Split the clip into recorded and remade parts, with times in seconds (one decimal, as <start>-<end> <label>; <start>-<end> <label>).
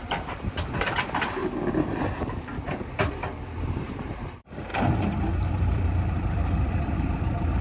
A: 0.0-1.4 remade; 1.4-2.7 recorded; 2.7-7.6 remade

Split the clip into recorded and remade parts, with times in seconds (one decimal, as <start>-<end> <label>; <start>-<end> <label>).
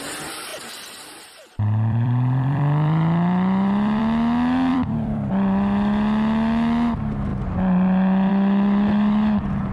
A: 0.0-0.5 recorded; 0.5-4.0 remade; 4.0-4.7 recorded; 4.7-5.3 remade; 5.3-9.7 recorded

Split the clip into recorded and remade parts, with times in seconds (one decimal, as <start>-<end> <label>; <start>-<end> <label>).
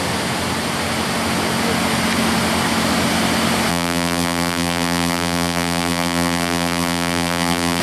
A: 0.0-3.7 recorded; 3.7-7.8 remade